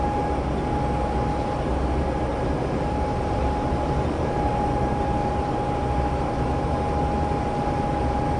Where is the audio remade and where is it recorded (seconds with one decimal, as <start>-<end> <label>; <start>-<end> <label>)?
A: 0.0-2.3 recorded; 2.3-4.5 remade; 4.5-8.4 recorded